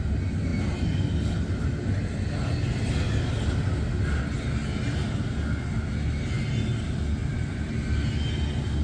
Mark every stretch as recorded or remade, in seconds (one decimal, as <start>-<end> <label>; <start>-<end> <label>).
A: 0.0-7.2 recorded; 7.2-7.7 remade; 7.7-8.8 recorded

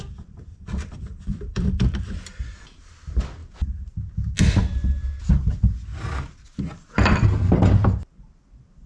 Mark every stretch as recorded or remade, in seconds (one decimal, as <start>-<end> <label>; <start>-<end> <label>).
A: 0.0-0.5 recorded; 0.5-2.9 remade; 2.9-8.9 recorded

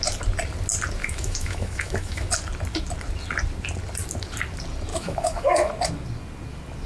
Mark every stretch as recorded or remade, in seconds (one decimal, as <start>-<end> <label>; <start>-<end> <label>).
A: 0.0-1.0 recorded; 1.0-2.3 remade; 2.3-4.9 recorded; 4.9-5.7 remade; 5.7-6.9 recorded

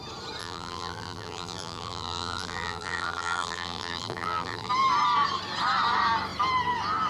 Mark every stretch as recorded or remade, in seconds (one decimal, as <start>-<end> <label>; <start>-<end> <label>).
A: 0.0-0.4 recorded; 0.4-4.7 remade; 4.7-7.1 recorded